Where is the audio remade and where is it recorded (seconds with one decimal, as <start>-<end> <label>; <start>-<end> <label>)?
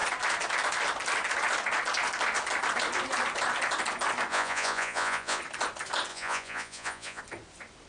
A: 0.0-4.3 recorded; 4.3-5.4 remade; 5.4-6.1 recorded; 6.1-7.2 remade; 7.2-7.9 recorded